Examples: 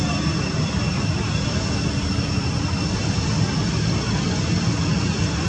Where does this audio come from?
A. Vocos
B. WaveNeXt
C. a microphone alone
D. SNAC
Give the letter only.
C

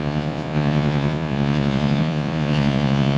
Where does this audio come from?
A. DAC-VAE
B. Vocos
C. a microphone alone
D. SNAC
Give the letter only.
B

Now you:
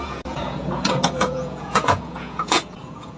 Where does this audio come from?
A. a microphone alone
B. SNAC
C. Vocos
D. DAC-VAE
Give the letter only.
C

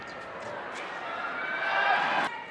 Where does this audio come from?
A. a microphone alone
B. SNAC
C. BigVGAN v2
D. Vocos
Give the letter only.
A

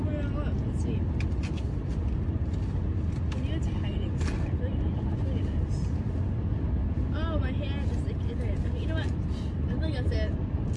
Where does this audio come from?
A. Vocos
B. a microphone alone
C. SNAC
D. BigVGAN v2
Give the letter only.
B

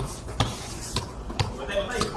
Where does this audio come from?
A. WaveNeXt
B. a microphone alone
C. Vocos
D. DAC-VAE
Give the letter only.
C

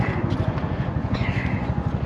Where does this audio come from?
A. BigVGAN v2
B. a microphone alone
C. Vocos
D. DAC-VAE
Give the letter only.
C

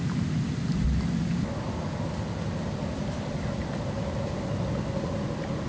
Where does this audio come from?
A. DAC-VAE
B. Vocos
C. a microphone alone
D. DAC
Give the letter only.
C